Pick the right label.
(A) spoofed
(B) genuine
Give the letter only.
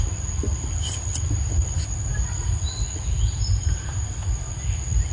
B